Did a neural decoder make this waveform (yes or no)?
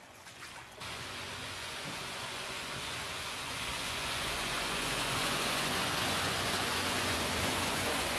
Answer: yes